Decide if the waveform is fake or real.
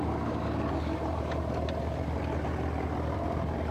real